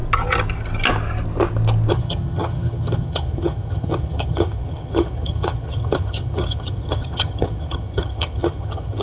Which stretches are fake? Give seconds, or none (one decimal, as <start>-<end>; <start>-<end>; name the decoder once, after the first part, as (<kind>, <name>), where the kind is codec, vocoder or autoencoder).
1.9-9.0 (vocoder, HiFi-GAN)